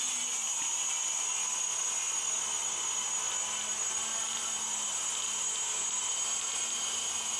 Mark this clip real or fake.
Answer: real